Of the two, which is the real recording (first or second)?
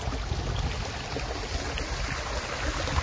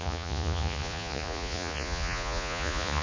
first